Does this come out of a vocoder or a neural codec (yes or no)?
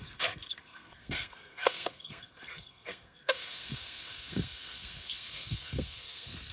yes